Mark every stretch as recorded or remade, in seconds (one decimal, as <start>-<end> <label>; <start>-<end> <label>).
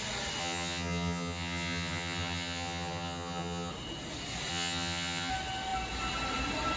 0.0-0.4 recorded; 0.4-3.7 remade; 3.7-4.5 recorded; 4.5-5.3 remade; 5.3-6.8 recorded